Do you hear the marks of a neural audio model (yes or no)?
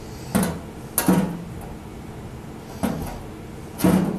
no